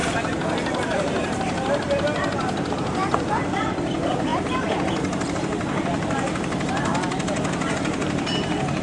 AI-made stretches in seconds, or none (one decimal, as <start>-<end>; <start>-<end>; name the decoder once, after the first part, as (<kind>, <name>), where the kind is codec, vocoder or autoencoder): 0.0-6.9 (vocoder, BigVGAN v2); 7.7-8.8